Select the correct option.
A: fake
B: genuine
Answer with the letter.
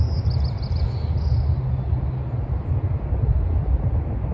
B